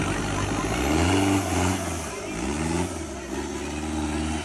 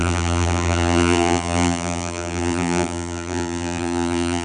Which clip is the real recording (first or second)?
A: first